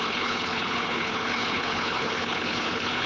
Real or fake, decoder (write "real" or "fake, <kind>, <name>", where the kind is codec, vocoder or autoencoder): fake, codec, HILCodec